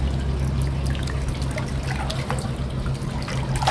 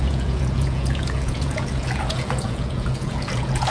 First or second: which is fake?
second